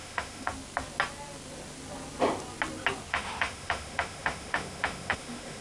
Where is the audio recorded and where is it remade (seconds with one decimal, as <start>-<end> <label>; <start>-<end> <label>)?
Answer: 0.0-0.5 remade; 0.5-3.1 recorded; 3.1-5.6 remade